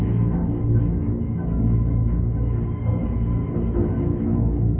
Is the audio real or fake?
fake